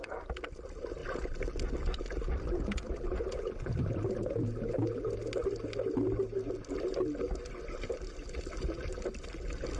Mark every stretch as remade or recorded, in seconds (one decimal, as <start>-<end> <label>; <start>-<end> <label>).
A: 0.0-9.8 recorded